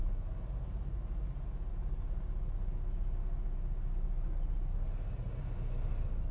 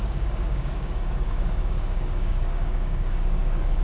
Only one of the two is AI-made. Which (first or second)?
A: second